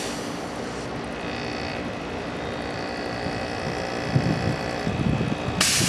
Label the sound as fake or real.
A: real